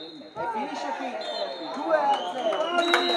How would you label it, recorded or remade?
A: recorded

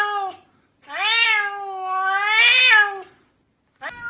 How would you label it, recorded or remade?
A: recorded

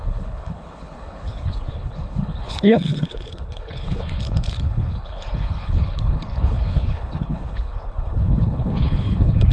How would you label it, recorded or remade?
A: remade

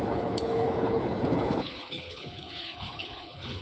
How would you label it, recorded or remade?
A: remade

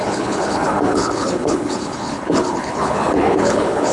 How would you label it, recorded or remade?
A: remade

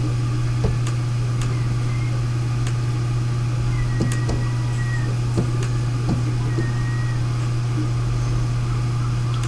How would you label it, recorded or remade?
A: recorded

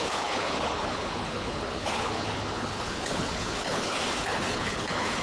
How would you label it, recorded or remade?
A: remade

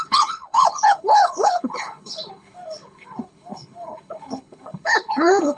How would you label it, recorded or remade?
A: remade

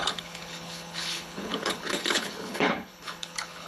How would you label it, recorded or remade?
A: remade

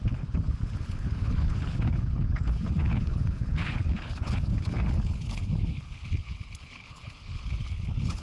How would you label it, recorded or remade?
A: remade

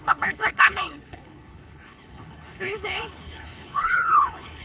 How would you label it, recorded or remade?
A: remade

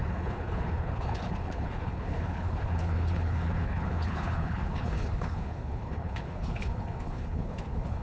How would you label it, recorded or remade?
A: remade